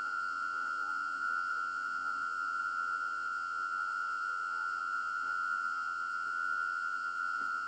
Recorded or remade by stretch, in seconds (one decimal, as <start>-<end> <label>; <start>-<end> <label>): 0.0-7.7 remade